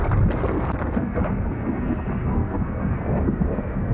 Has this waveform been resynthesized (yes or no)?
yes